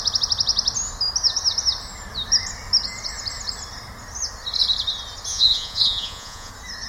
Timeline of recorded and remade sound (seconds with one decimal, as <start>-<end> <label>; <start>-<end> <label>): 0.0-5.3 recorded; 5.3-6.5 remade; 6.5-6.9 recorded